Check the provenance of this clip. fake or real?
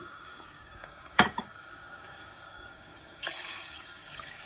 fake